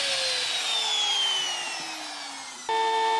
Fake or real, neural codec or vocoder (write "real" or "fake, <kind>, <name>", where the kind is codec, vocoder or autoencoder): real